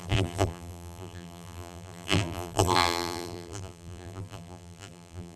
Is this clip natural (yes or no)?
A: no